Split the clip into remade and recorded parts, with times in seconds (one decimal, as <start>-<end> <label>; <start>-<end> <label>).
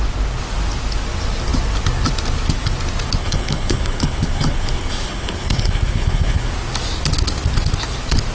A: 0.0-3.2 recorded; 3.2-6.5 remade; 6.5-8.3 recorded